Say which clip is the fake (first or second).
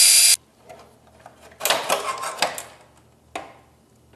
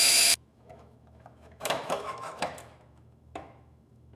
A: second